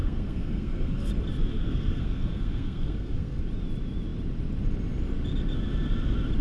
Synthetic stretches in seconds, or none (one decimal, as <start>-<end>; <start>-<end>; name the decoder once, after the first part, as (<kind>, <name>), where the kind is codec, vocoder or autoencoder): 0.0-1.1 (codec, SNAC); 1.5-3.4